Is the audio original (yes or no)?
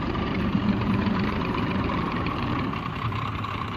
no